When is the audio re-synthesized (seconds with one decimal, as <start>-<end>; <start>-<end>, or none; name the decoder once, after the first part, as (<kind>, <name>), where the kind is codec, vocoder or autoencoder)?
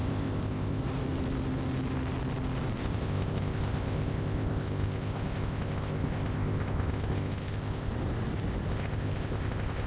0.0-0.8 (codec, ZipCodec); 2.8-7.9; 8.7-9.9